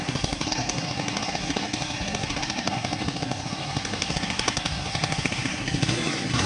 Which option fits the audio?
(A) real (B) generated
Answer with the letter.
B